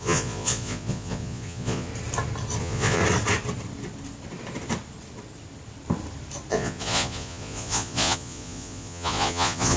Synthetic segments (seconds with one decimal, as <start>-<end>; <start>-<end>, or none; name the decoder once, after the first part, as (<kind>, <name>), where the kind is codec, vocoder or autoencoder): 0.0-1.9 (vocoder, Vocos); 2.6-3.0; 6.5-9.8